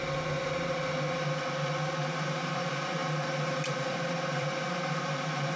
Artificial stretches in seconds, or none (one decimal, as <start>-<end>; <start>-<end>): 2.0-5.6